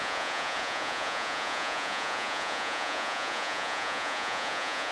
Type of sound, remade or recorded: remade